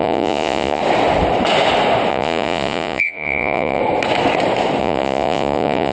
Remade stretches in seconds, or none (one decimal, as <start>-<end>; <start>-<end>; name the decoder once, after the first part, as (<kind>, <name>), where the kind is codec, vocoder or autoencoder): 0.0-0.8 (vocoder, Vocos); 2.1-3.8; 4.8-5.9